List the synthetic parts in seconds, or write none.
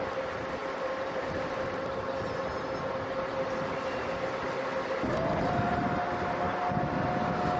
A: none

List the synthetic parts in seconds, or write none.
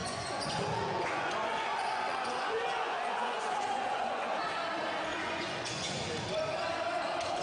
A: 0.0-4.4; 5.1-6.0